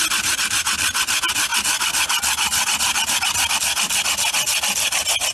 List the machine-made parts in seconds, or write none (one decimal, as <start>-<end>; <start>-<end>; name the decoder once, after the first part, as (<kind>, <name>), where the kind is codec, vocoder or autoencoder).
none